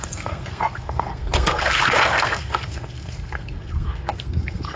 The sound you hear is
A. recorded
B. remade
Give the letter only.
B